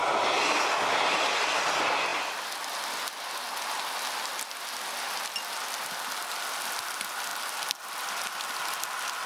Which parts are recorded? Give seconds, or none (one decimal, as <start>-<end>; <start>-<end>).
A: 0.0-9.3